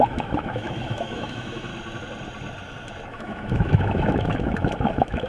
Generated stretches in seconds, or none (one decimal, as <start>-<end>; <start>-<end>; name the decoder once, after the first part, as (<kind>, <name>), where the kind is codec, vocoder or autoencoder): 0.0-1.7 (autoencoder, DAC-VAE); 3.1-5.3